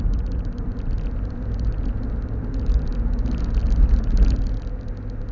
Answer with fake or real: real